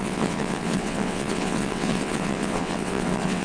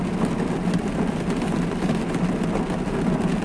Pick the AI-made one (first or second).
first